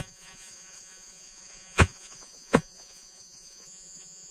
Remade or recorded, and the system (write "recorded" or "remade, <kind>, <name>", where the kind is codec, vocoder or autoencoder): remade, vocoder, Vocos